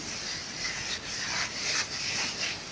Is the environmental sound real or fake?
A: real